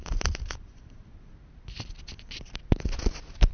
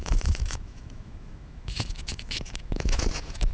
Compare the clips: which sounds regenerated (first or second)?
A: second